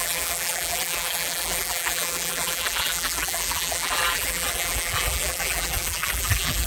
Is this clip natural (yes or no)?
no